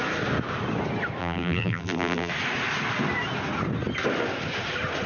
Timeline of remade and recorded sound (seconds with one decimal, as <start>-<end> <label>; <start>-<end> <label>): 0.0-1.2 recorded; 1.2-2.3 remade; 2.3-5.1 recorded